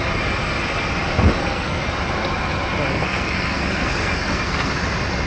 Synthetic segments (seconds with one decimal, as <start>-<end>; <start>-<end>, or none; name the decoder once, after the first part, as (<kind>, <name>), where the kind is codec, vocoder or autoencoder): 1.4-1.9 (codec, SNAC); 2.9-4.7